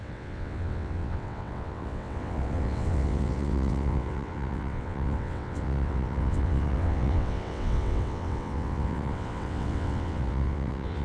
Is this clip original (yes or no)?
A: no